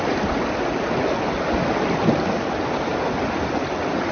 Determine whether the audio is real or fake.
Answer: real